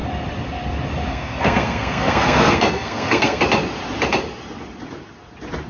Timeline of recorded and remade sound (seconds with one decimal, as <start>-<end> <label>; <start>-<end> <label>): 0.0-1.1 recorded; 1.1-3.4 remade; 3.4-5.7 recorded